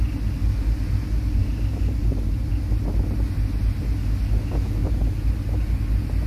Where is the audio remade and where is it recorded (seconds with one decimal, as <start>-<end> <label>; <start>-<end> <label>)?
0.0-1.4 recorded; 1.4-2.5 remade; 2.5-6.3 recorded